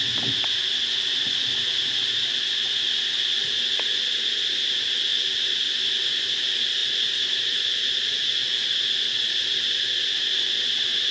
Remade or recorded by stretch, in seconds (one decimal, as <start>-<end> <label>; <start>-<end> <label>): 0.0-6.8 recorded; 6.8-9.6 remade; 9.6-11.1 recorded